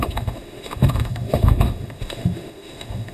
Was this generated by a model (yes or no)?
yes